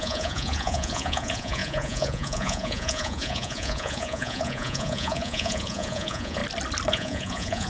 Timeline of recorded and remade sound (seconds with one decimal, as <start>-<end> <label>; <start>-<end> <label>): 0.0-6.4 remade; 6.4-6.9 recorded; 6.9-7.7 remade